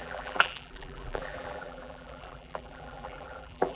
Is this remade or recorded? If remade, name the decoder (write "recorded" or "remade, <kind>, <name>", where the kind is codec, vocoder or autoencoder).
remade, vocoder, BigVGAN v2